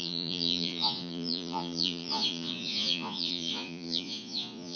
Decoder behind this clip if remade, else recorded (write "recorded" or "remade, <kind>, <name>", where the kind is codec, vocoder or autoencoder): remade, vocoder, Vocos